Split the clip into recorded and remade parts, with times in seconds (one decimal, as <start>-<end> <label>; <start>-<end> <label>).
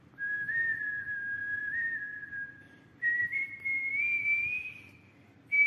0.0-3.9 remade; 3.9-4.6 recorded; 4.6-5.7 remade